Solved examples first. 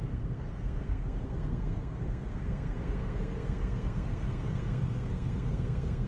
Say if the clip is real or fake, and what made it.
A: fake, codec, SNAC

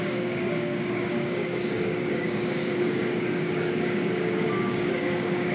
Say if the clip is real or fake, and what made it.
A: fake, codec, DAC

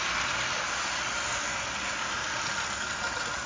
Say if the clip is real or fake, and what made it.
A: real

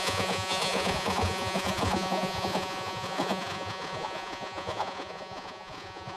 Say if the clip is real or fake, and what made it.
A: fake, vocoder, Vocos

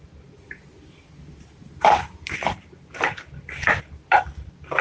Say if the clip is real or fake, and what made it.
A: real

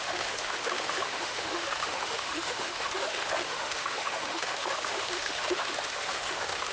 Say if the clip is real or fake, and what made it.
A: fake, autoencoder, DAC-VAE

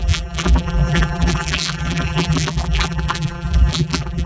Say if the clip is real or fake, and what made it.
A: fake, vocoder, BigVGAN v2